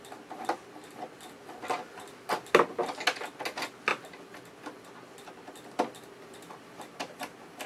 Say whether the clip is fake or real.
real